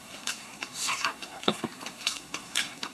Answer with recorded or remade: remade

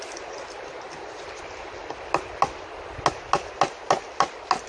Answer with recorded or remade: recorded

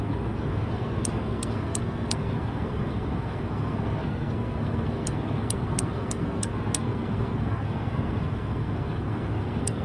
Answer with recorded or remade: remade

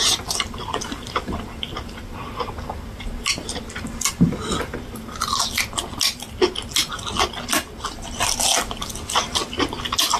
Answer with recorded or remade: recorded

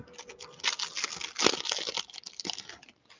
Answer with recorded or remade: recorded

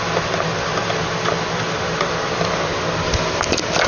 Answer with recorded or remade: recorded